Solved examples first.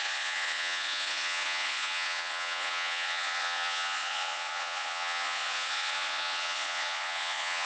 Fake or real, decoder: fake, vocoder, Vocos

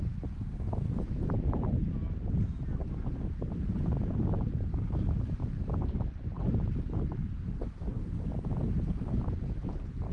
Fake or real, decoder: real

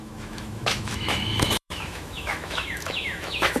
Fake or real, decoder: fake, autoencoder, DAC-VAE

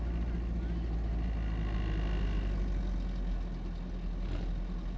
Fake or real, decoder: real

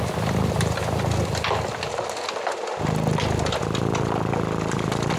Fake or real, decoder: real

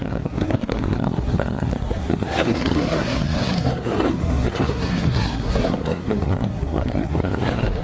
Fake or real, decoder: fake, codec, SNAC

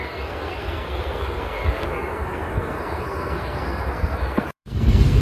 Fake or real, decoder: fake, codec, SNAC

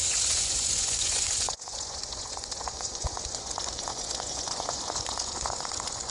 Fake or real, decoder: fake, vocoder, Vocos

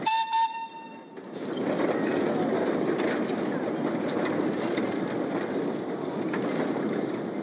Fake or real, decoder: real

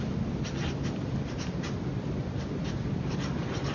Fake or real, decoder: fake, vocoder, BigVGAN v2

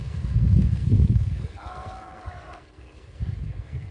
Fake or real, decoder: fake, codec, SNAC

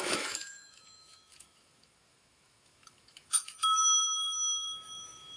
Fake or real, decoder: fake, autoencoder, DAC-VAE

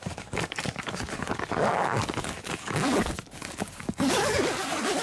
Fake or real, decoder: fake, codec, DAC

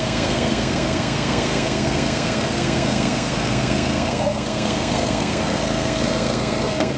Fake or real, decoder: fake, codec, SNAC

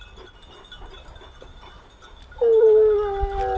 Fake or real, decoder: real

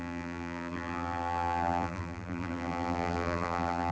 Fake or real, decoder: fake, vocoder, BigVGAN v2